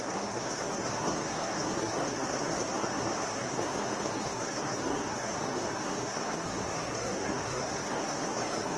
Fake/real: fake